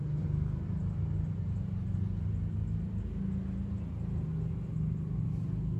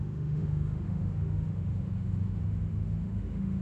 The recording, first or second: first